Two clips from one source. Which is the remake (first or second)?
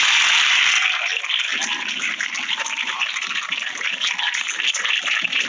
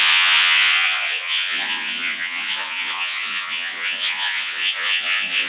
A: second